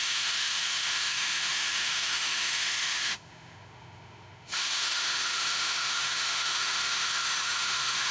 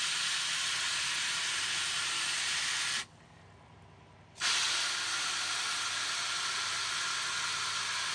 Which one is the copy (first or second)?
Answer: first